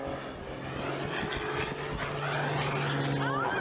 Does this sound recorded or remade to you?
recorded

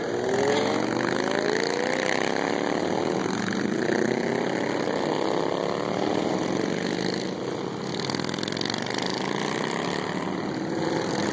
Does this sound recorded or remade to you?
recorded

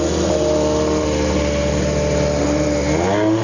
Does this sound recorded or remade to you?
recorded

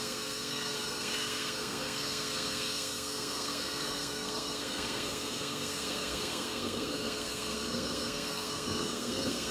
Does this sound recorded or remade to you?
remade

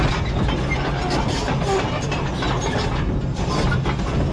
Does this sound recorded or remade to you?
recorded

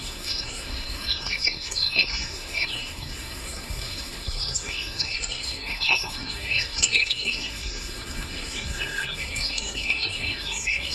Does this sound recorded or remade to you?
remade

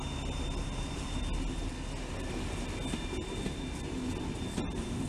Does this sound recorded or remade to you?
recorded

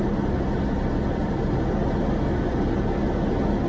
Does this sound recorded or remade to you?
recorded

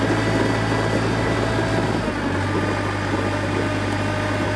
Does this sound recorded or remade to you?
recorded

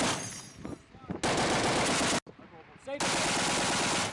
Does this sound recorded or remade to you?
recorded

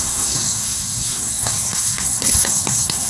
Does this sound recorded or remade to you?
remade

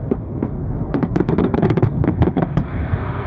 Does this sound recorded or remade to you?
remade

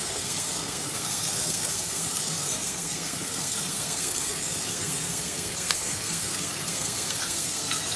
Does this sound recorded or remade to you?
remade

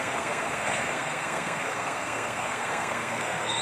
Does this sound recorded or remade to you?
remade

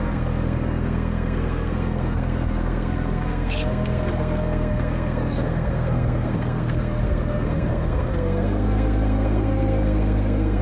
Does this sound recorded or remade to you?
remade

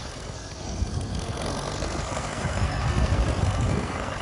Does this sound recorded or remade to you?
remade